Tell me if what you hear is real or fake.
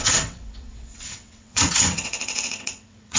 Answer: fake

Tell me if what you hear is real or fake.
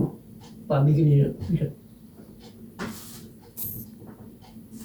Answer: real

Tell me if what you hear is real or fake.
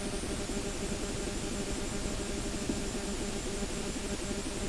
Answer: real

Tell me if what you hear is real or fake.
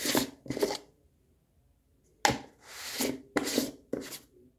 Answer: real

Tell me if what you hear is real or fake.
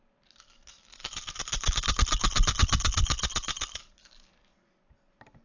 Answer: real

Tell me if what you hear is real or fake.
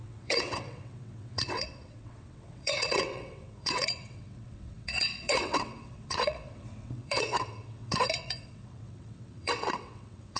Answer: fake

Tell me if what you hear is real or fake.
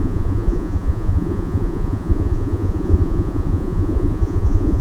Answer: fake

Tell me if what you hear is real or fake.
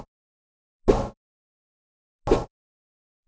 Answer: real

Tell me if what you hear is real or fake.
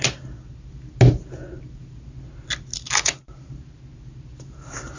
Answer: real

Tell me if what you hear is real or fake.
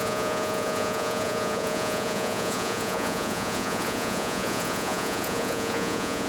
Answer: fake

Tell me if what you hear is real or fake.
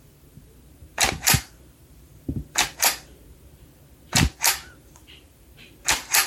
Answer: fake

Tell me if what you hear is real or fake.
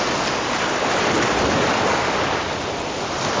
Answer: real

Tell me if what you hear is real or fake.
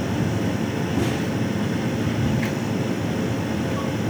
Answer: real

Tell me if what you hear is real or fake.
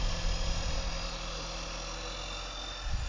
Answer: real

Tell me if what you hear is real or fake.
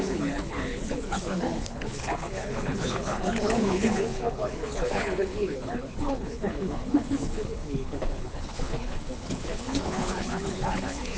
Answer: fake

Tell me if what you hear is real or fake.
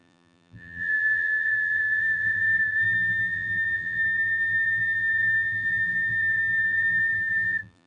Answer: fake